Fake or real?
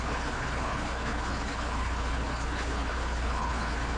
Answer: fake